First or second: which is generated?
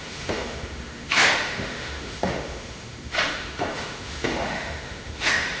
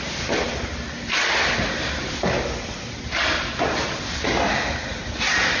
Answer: first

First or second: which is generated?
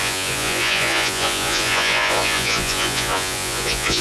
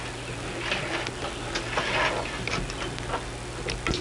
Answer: first